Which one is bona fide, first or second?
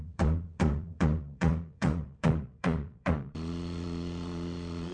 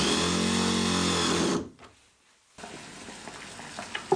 second